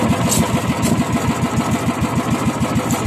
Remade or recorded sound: recorded